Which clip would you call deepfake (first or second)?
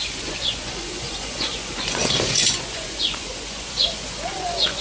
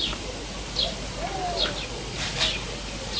first